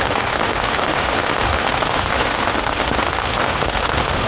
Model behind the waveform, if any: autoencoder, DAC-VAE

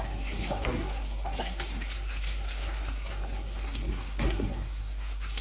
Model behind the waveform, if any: codec, SNAC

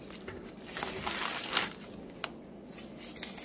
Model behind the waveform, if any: none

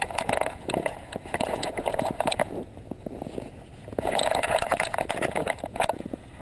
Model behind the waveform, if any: vocoder, Vocos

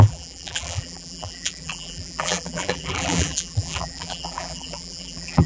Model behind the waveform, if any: vocoder, BigVGAN v2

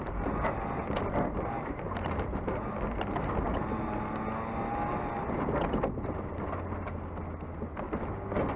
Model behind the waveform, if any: none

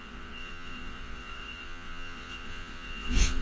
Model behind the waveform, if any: vocoder, Vocos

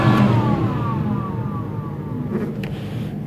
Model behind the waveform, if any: none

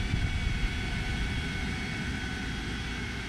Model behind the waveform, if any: none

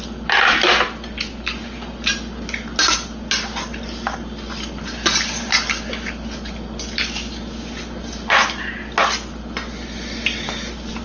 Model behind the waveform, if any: none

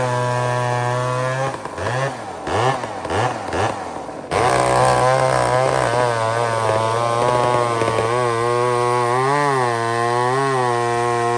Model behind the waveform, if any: none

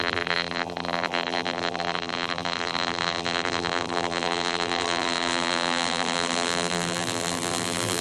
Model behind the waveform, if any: vocoder, BigVGAN v2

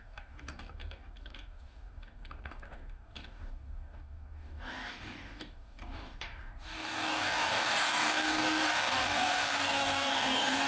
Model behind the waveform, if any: codec, DAC